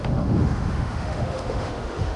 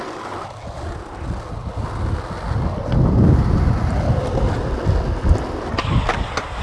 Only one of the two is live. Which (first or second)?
second